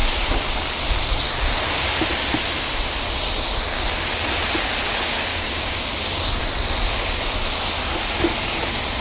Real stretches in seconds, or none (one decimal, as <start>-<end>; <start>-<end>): 0.0-5.3; 5.8-9.0